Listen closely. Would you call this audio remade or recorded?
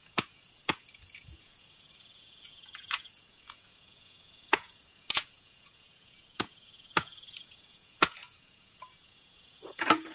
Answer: remade